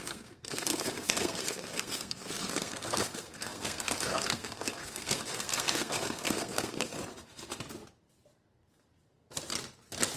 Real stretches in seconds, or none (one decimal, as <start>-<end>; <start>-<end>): 6.9-10.2